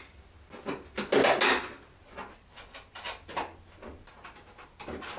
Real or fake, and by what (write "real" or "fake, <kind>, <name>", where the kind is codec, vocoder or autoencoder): real